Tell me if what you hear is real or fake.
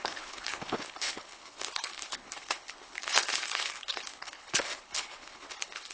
fake